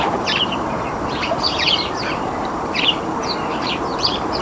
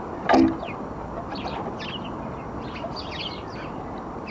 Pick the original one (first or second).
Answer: second